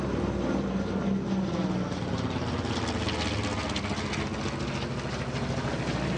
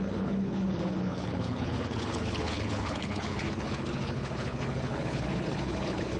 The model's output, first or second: second